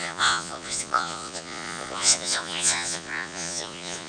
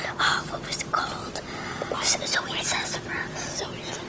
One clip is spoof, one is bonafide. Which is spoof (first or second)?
first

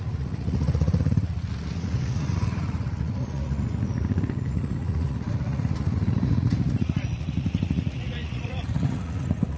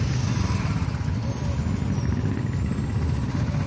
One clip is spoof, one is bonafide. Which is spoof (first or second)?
first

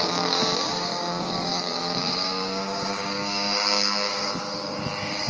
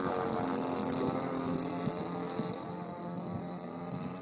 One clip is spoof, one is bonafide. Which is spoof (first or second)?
first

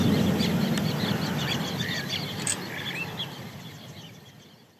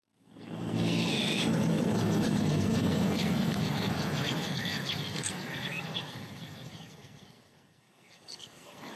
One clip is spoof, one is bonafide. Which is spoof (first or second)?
second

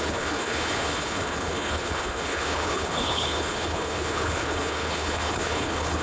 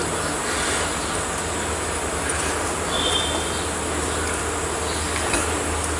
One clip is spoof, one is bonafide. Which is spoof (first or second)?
first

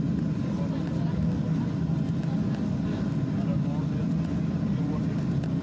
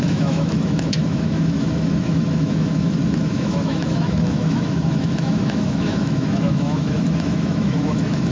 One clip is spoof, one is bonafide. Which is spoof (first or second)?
second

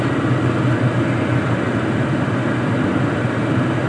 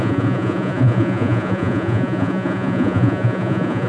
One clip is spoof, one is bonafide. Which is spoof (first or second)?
second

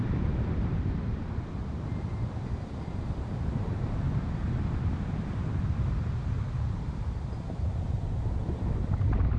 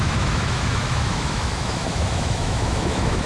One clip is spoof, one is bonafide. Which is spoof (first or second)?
second